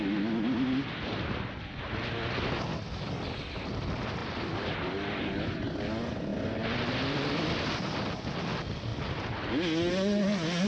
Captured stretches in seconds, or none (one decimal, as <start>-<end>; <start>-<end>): 0.0-4.2; 5.8-10.7